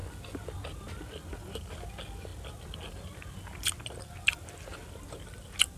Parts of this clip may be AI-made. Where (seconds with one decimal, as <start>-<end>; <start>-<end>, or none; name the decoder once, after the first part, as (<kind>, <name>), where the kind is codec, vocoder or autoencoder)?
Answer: none

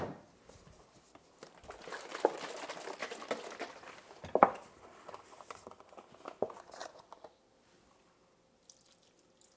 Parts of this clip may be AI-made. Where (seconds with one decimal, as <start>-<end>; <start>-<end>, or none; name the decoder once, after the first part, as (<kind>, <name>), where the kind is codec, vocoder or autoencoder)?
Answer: 2.1-2.6 (vocoder, BigVGAN v2); 6.8-7.5

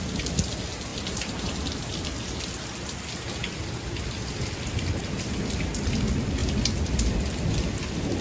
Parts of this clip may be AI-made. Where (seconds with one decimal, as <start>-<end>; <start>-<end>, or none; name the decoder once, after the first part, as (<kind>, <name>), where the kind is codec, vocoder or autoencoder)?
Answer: 6.4-7.5 (vocoder, BigVGAN v2)

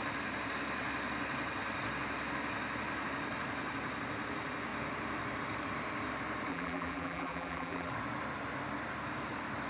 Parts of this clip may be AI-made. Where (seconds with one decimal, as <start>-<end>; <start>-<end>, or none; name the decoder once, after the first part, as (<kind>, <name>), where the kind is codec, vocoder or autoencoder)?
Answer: 6.5-7.9 (vocoder, BigVGAN v2)

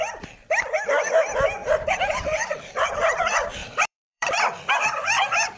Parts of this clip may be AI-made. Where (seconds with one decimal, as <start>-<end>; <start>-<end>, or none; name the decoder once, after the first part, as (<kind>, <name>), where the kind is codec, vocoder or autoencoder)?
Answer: 1.6-2.6 (vocoder, BigVGAN v2); 3.6-4.7